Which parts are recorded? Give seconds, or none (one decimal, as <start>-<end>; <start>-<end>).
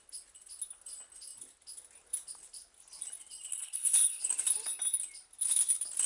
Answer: 0.0-3.5; 4.2-6.1